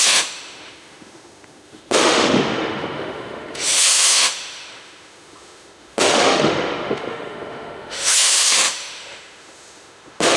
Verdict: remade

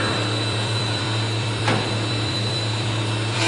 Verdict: remade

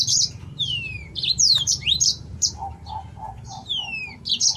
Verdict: remade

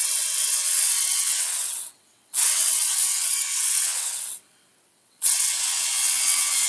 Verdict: remade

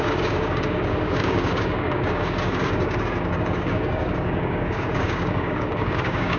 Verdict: remade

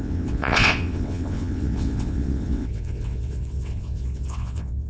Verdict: remade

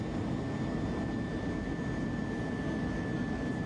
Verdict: recorded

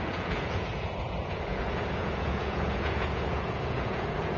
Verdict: remade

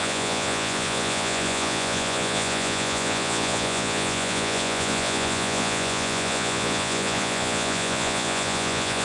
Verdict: remade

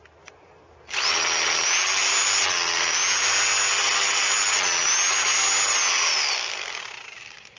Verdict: recorded